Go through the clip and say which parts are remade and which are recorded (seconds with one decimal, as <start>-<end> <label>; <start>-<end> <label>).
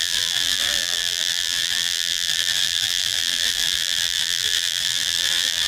0.0-5.7 remade